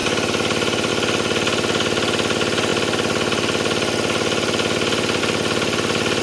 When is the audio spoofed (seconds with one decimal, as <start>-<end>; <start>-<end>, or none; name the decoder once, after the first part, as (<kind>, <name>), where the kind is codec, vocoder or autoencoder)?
0.0-0.9 (vocoder, BigVGAN v2)

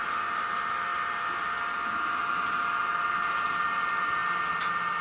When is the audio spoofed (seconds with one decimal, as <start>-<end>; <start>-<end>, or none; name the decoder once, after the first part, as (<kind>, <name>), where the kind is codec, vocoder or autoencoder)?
none

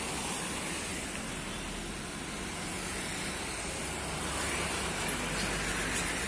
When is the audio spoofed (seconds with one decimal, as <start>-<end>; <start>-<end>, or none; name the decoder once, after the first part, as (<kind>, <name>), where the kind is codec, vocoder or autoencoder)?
none

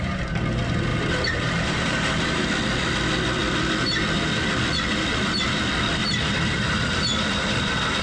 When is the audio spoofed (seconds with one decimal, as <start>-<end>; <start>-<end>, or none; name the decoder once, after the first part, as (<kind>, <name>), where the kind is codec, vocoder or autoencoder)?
0.9-2.4 (vocoder, BigVGAN v2); 6.0-7.0

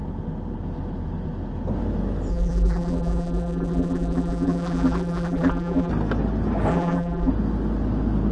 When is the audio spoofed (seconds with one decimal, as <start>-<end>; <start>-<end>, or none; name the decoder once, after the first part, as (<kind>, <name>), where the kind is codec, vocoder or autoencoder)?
2.3-5.9 (vocoder, BigVGAN v2); 6.7-7.3

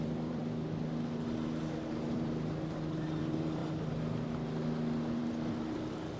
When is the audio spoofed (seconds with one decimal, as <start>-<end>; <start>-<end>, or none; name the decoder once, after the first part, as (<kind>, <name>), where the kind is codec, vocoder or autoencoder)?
0.0-0.4 (vocoder, BigVGAN v2); 2.1-3.6; 5.2-6.2

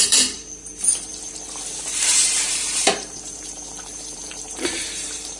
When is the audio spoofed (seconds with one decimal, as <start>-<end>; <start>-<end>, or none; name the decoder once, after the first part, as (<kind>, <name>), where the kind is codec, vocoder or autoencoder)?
0.0-5.4 (vocoder, BigVGAN v2)